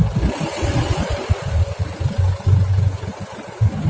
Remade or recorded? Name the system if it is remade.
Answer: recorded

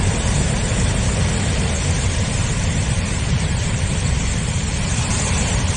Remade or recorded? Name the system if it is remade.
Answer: remade, vocoder, BigVGAN v2